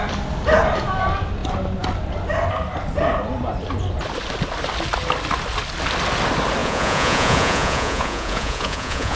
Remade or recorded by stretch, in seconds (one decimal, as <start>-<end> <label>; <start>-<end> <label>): 0.0-6.6 recorded; 6.6-9.2 remade